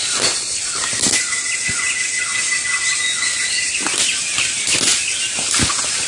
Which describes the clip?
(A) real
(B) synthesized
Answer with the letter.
A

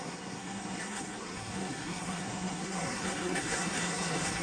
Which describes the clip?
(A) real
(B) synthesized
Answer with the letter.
B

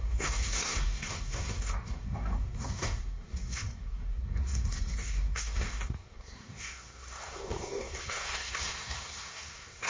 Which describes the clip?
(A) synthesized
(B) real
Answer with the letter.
A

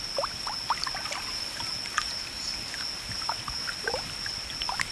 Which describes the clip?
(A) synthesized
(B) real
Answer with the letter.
B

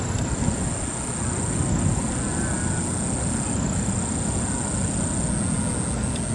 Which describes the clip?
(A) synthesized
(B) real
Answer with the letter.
B